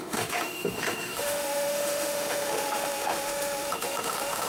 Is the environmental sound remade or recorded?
remade